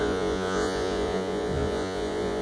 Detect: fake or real fake